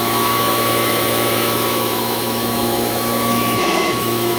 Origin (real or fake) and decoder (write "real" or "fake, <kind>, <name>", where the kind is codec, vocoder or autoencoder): fake, autoencoder, DAC-VAE